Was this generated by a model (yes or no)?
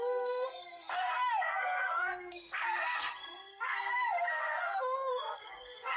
yes